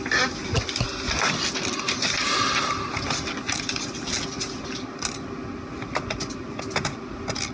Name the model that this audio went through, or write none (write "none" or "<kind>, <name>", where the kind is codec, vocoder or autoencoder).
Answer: none